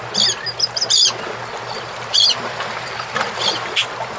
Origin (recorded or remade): recorded